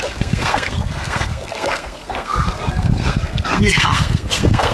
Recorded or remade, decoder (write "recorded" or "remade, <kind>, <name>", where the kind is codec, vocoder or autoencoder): remade, codec, SNAC